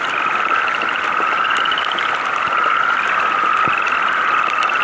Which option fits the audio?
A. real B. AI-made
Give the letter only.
A